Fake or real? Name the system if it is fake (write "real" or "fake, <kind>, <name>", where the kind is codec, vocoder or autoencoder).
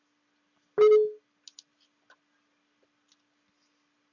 real